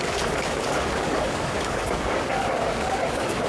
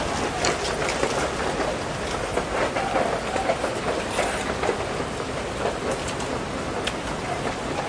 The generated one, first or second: first